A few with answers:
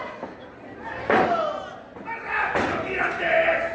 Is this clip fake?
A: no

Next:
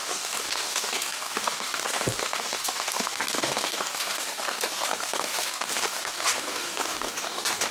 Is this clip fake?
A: yes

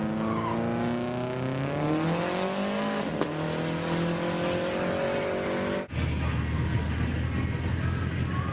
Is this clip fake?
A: no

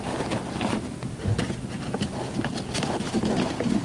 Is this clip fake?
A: no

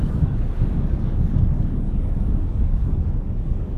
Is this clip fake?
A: yes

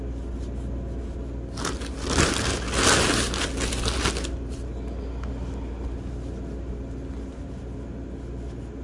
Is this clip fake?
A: no